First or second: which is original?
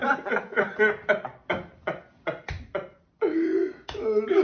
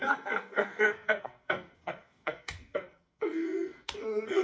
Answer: first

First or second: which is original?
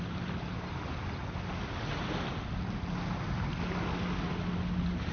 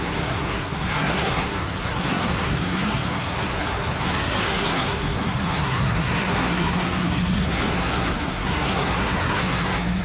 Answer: first